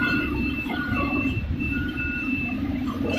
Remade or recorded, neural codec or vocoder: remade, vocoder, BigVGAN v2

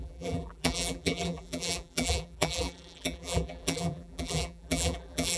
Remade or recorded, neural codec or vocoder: remade, vocoder, BigVGAN v2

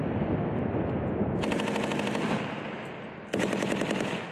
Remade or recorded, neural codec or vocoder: recorded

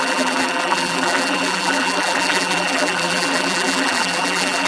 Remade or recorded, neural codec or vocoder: remade, vocoder, BigVGAN v2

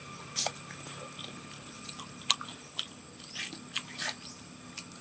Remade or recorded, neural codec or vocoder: recorded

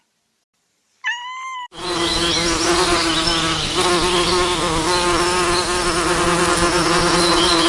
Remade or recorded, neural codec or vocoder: recorded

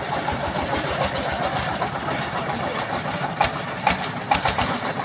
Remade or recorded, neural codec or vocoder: remade, vocoder, BigVGAN v2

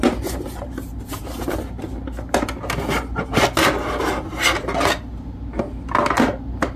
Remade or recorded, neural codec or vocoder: recorded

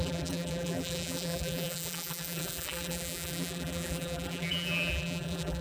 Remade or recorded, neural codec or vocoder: remade, vocoder, BigVGAN v2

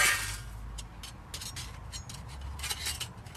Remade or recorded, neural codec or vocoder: recorded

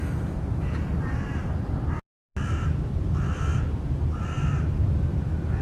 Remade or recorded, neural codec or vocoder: recorded